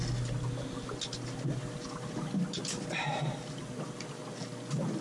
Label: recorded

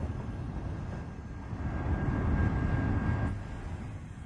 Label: recorded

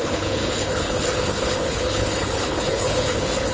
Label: remade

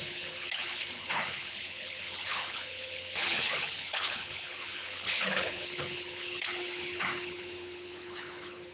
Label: remade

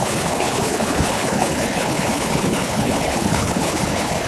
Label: remade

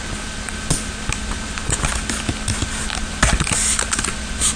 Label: recorded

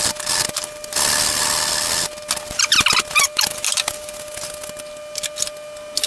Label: recorded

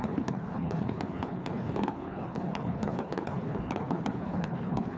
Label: remade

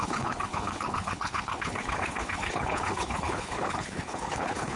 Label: remade